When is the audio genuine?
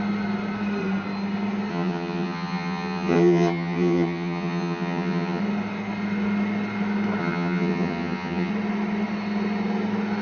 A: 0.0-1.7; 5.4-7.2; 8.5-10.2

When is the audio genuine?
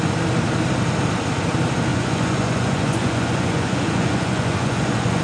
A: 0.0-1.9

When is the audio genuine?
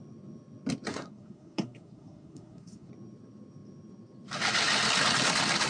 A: 0.0-0.9; 2.9-5.7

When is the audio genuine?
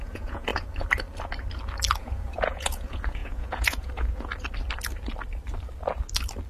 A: 0.5-2.0; 4.3-6.5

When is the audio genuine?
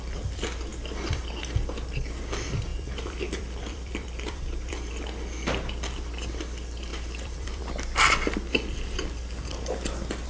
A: 0.0-2.7; 4.9-6.9; 7.6-10.3